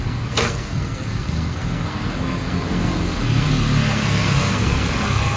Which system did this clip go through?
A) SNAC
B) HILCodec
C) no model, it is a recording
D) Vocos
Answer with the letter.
A